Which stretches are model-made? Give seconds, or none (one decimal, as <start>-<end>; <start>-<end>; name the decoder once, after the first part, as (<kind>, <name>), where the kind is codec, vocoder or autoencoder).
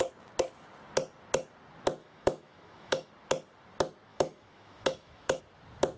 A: 2.0-3.1 (autoencoder, DAC-VAE); 4.1-5.4